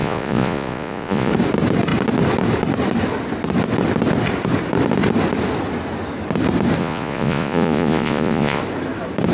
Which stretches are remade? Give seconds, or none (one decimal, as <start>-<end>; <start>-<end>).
0.0-1.3; 6.8-8.6